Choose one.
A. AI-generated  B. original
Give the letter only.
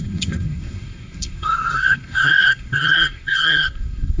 A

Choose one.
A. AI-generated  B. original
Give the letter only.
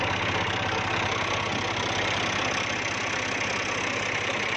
B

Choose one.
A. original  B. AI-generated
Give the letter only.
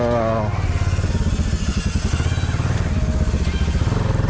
A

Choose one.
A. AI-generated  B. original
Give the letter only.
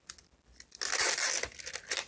B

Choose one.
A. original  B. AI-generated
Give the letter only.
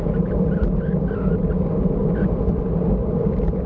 A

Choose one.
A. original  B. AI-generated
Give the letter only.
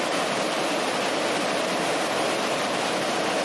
A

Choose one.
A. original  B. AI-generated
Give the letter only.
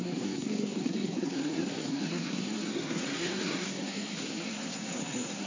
B